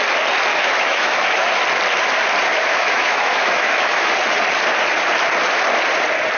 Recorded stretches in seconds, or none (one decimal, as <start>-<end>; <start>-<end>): 0.0-0.5; 1.6-2.5; 4.1-6.4